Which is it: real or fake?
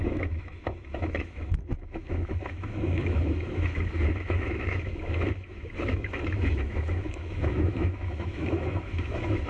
fake